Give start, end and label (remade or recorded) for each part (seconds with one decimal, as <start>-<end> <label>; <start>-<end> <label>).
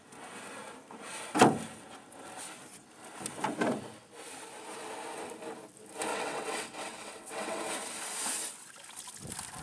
0.0-6.1 recorded; 6.1-7.6 remade; 7.6-9.6 recorded